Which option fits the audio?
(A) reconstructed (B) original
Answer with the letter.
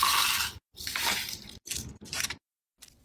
B